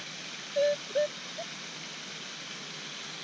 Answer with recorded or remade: recorded